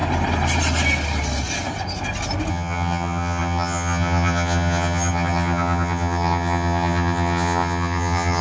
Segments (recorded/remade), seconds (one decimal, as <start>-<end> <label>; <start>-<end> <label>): 0.0-2.5 recorded; 2.5-8.4 remade